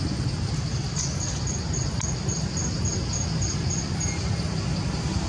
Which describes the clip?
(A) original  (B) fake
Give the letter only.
A